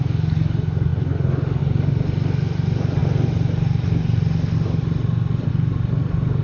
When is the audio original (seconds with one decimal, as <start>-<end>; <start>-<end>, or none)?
0.0-6.4